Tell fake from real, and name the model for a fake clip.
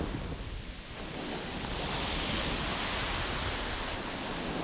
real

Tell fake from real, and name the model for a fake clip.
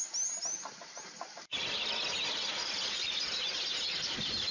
real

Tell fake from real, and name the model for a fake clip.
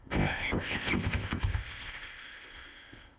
fake, codec, ZipCodec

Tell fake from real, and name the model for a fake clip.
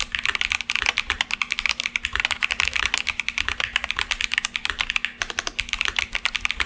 real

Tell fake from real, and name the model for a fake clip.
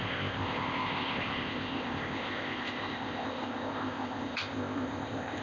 fake, codec, ZipCodec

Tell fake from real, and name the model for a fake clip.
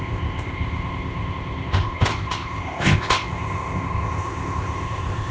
fake, codec, ZipCodec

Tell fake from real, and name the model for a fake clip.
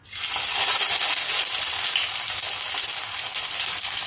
real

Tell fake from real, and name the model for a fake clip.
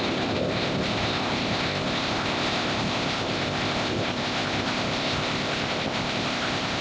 fake, codec, ZipCodec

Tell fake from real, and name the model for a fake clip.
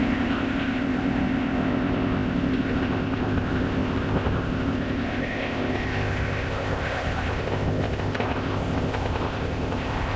fake, codec, ZipCodec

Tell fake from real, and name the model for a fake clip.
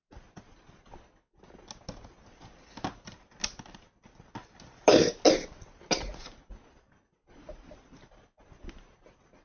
real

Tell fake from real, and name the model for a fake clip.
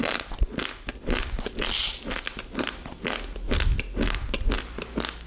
real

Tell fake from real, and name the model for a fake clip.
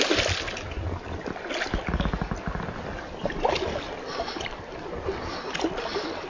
real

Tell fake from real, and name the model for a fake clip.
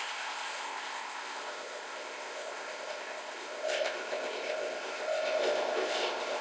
fake, codec, ZipCodec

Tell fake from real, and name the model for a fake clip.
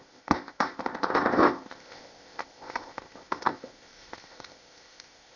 fake, codec, ZipCodec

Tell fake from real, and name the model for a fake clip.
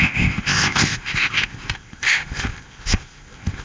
fake, codec, ZipCodec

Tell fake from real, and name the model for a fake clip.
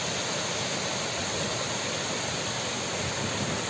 real